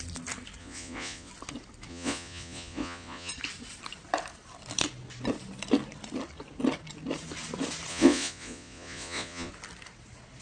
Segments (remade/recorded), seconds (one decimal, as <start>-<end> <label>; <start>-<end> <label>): 0.0-0.6 recorded; 0.6-1.3 remade; 1.3-1.9 recorded; 1.9-3.3 remade; 3.3-7.9 recorded; 7.9-9.5 remade; 9.5-10.4 recorded